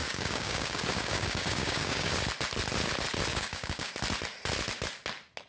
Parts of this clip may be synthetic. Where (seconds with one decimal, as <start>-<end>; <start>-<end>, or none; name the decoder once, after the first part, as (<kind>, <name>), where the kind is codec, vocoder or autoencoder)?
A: 0.0-2.1 (codec, DAC); 3.3-3.9